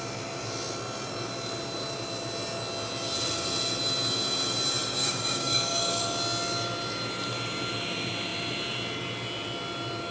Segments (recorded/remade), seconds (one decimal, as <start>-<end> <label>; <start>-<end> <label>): 0.0-5.0 recorded; 5.0-6.0 remade; 6.0-10.1 recorded